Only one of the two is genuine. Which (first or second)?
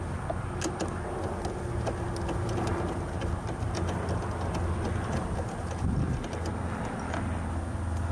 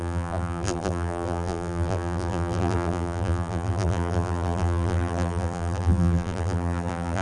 first